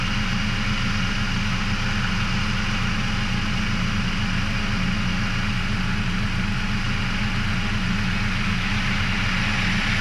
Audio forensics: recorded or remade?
recorded